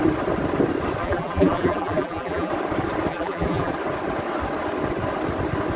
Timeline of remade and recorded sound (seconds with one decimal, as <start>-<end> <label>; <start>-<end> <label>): 0.0-1.0 recorded; 1.0-2.5 remade; 2.5-3.1 recorded; 3.1-3.7 remade; 3.7-5.8 recorded